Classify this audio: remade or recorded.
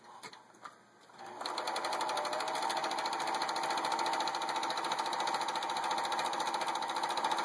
recorded